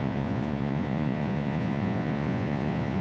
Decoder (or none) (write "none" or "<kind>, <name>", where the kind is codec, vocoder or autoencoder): vocoder, Vocos